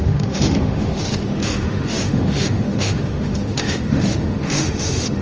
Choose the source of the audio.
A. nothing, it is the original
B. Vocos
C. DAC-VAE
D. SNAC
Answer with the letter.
C